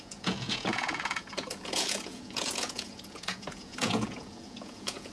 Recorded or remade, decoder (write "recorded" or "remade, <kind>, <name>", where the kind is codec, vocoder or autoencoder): remade, vocoder, Vocos